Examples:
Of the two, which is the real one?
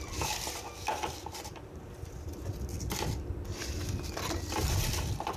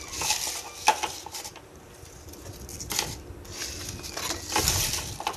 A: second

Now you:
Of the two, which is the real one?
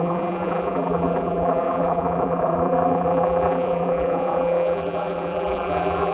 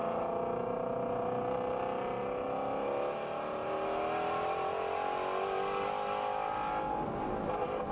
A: second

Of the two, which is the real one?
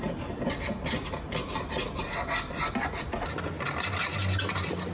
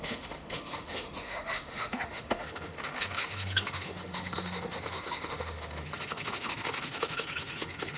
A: first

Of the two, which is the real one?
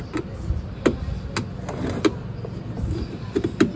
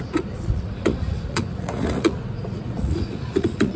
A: first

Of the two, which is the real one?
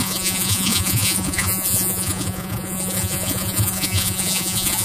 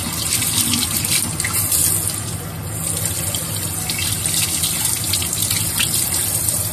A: second